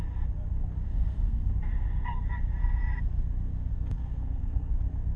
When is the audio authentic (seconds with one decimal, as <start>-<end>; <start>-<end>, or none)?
0.0-0.9; 1.5-3.7; 4.7-5.2